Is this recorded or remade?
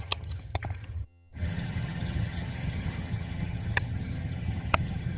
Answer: remade